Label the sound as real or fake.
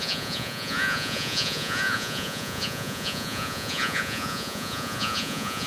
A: fake